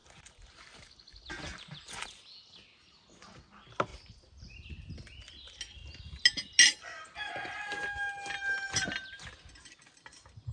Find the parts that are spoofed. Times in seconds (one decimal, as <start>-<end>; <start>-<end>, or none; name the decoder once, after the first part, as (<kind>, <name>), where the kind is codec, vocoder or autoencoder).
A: none